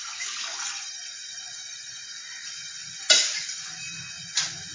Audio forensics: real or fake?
real